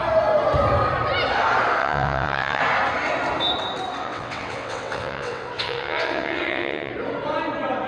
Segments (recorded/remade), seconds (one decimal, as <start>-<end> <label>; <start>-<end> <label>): 0.0-1.8 recorded; 1.8-2.6 remade; 2.6-4.0 recorded; 4.0-6.9 remade; 6.9-7.9 recorded